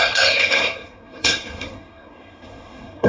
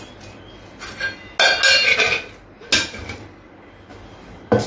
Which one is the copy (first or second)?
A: first